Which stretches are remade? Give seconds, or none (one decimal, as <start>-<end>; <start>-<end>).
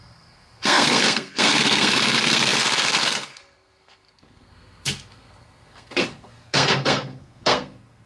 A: 0.0-8.1